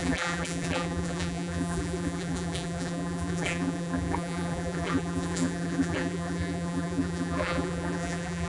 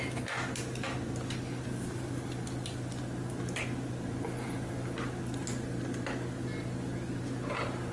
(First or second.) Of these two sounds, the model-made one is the first